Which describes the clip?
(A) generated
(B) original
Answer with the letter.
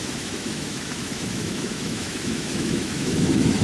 A